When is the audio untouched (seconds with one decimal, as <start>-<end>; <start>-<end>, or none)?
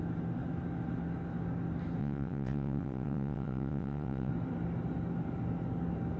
0.0-2.0; 4.3-6.2